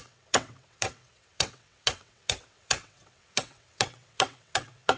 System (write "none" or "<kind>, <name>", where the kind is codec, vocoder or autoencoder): vocoder, WaveNeXt